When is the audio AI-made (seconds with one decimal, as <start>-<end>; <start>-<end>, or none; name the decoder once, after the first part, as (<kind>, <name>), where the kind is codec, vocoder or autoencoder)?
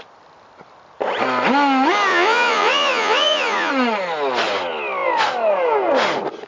2.1-3.7 (vocoder, Vocos)